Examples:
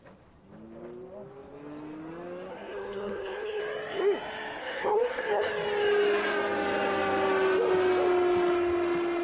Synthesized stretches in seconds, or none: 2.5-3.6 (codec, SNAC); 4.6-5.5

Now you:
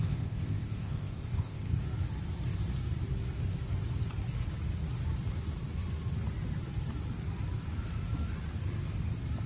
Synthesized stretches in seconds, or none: 0.0-1.8 (codec, ZipCodec)

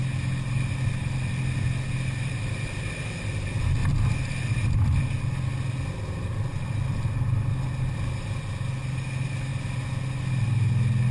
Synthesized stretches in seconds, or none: none

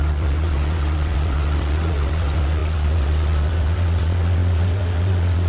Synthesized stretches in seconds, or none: 0.0-5.5 (vocoder, WaveNeXt)

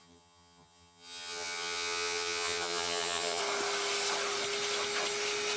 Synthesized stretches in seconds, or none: 0.0-3.4 (vocoder, HiFi-GAN)

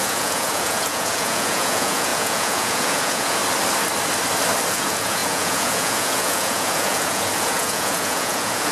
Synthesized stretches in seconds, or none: 0.0-3.4 (vocoder, Vocos); 4.7-8.7

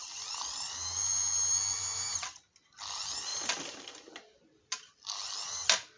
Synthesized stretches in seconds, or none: none

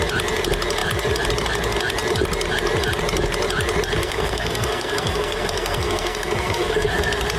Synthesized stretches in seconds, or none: 4.0-6.9 (codec, SNAC)